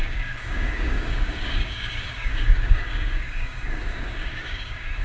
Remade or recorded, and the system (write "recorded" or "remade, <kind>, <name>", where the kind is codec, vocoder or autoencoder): remade, codec, DAC